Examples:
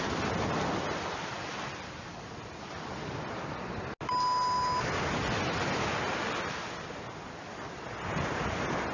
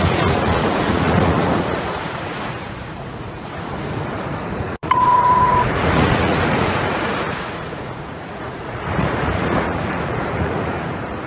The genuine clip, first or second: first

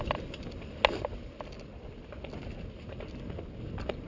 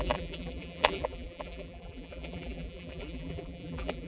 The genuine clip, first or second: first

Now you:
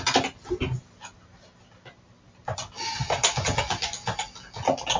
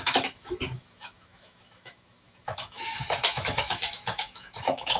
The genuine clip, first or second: first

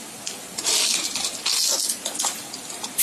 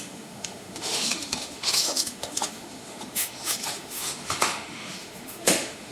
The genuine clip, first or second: first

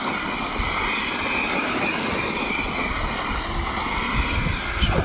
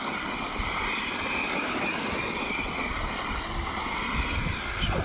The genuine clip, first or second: first